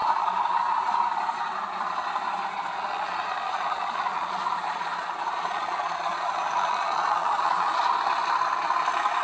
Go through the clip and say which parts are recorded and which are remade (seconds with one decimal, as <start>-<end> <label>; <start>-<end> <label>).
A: 0.0-0.6 remade; 0.6-2.7 recorded; 2.7-7.9 remade; 7.9-9.2 recorded